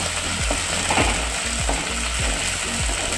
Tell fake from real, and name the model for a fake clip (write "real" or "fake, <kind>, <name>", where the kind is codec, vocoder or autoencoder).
real